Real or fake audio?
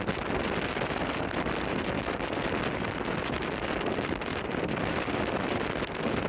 real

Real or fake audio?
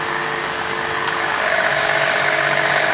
fake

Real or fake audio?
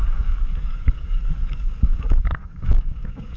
fake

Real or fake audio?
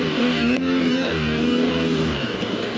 fake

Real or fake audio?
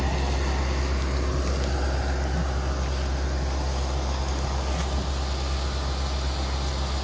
real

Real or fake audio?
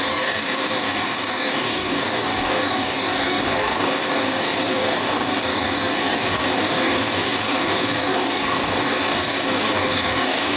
fake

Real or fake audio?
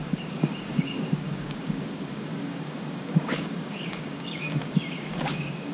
fake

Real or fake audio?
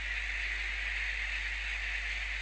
real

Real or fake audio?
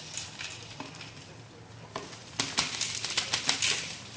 real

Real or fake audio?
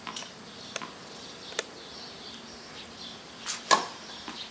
real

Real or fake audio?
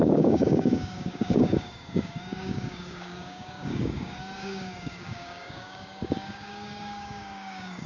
fake